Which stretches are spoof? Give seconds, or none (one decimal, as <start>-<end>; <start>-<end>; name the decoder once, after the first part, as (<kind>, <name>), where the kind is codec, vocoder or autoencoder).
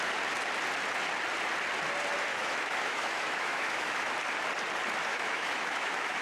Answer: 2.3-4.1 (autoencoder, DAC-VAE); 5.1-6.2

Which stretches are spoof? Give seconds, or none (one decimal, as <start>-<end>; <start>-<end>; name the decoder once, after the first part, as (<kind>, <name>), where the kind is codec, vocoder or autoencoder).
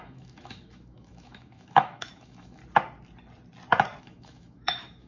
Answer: 0.0-2.6 (autoencoder, DAC-VAE); 4.0-5.1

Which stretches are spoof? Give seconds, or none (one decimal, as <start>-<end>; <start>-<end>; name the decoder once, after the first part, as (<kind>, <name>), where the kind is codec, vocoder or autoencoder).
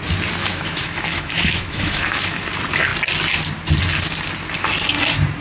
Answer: 0.4-2.4 (autoencoder, DAC-VAE)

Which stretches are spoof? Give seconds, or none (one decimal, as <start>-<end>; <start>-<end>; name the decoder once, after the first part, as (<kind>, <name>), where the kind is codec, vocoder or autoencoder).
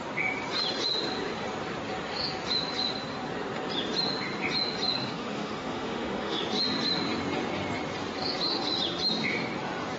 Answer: 5.0-6.4 (autoencoder, DAC-VAE)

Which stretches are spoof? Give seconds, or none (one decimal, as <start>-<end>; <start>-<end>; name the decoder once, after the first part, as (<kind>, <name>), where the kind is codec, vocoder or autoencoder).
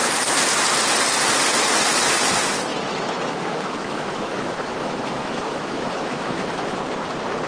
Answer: 2.7-6.8 (autoencoder, DAC-VAE)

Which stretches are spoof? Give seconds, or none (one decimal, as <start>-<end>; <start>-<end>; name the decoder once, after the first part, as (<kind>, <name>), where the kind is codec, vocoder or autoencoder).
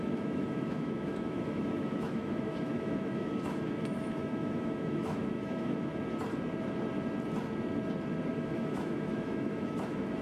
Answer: 0.0-5.9 (autoencoder, DAC-VAE); 8.3-10.2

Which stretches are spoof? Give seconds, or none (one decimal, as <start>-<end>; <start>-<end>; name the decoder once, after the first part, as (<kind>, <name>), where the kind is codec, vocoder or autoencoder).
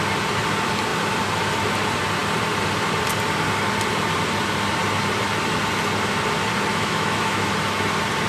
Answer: 6.7-7.5 (autoencoder, DAC-VAE)